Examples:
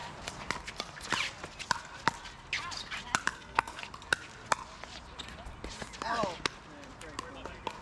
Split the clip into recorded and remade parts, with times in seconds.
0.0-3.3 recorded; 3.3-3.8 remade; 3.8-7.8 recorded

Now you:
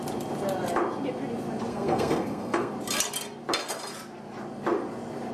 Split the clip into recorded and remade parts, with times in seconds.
0.0-1.7 recorded; 1.7-2.7 remade; 2.7-5.3 recorded